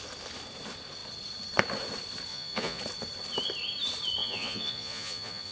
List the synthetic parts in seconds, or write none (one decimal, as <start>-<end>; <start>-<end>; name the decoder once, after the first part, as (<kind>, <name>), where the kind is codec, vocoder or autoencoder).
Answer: 2.3-2.8 (vocoder, Vocos); 4.2-5.5